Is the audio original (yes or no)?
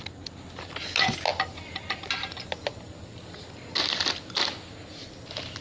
yes